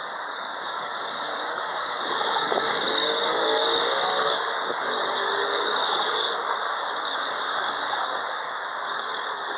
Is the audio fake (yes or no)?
yes